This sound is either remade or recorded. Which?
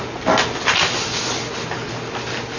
recorded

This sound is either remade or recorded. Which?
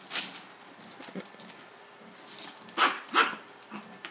recorded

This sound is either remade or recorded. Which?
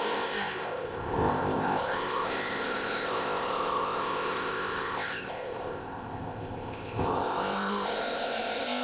remade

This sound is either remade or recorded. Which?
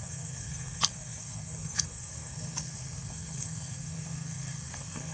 remade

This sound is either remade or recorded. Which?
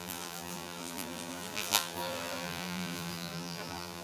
remade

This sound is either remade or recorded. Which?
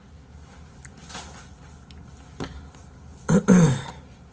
recorded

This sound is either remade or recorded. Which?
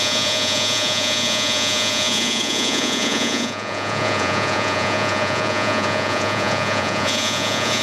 remade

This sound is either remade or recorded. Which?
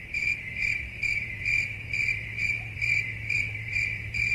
remade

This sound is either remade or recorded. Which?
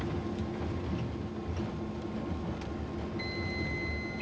recorded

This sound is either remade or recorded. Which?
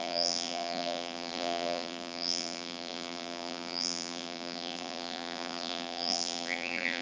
remade